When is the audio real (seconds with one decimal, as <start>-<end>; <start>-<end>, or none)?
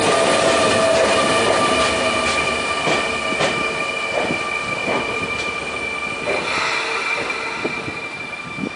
0.0-0.9; 1.7-4.8; 5.6-7.9; 8.4-8.8